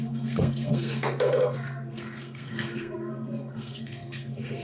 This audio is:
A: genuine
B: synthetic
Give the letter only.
B